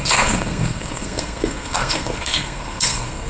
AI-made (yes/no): yes